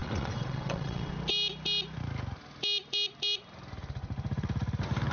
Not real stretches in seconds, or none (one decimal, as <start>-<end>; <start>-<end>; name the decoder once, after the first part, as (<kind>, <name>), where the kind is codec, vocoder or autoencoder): 0.0-1.1 (vocoder, WaveNeXt)